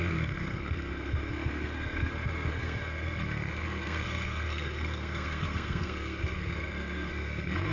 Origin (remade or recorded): remade